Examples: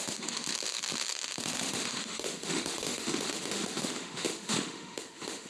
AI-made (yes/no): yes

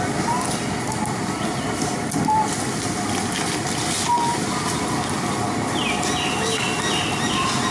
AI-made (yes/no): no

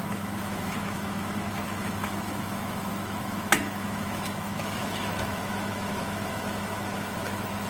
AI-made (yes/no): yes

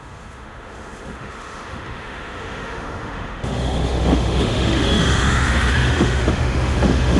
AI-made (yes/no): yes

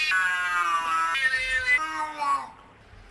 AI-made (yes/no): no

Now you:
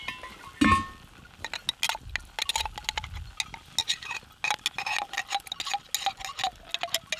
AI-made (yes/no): no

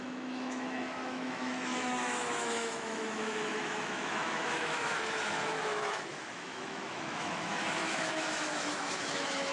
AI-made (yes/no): yes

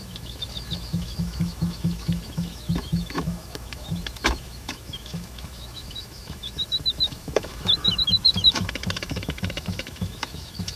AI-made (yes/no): yes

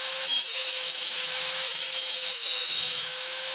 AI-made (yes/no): yes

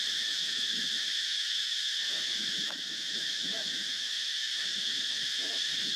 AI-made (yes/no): yes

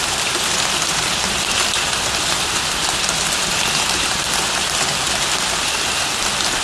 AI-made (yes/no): no